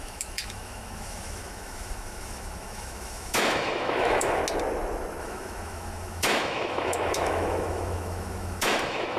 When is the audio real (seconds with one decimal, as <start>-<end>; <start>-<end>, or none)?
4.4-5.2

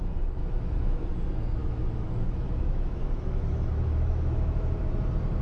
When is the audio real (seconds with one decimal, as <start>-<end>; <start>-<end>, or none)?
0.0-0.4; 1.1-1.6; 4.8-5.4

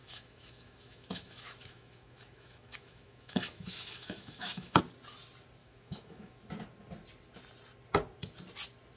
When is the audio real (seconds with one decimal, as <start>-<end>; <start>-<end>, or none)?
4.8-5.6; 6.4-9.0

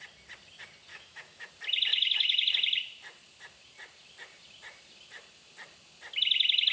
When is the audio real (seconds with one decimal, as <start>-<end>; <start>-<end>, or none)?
0.0-0.9; 1.5-1.9; 2.5-6.7